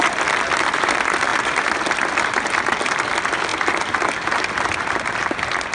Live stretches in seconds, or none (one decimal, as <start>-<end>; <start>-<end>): 0.0-5.7